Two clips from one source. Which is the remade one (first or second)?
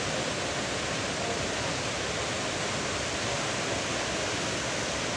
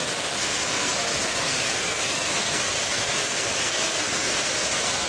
second